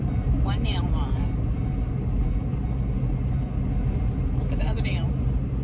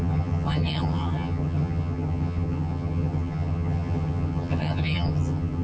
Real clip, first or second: first